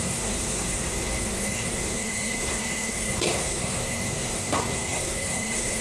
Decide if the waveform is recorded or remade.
remade